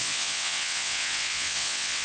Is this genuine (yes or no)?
no